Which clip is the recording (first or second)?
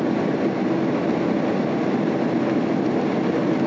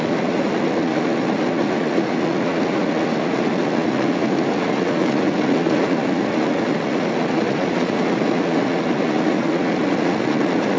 first